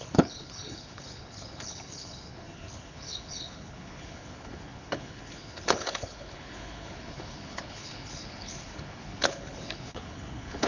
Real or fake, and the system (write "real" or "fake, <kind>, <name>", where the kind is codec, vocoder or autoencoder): fake, codec, HILCodec